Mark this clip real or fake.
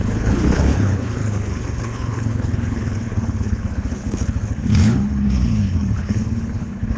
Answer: fake